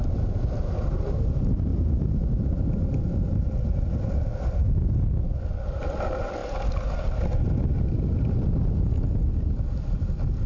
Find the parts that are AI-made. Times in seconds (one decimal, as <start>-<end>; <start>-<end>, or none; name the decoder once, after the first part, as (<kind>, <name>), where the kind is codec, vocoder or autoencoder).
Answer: none